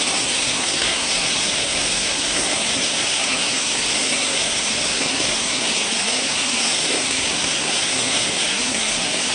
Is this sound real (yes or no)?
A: no